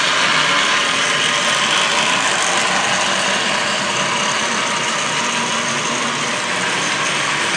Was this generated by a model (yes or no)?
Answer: no